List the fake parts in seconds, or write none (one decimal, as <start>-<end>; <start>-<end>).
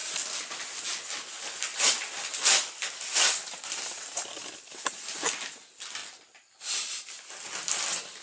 1.7-3.6; 6.0-6.6